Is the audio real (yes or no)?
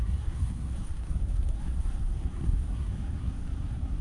no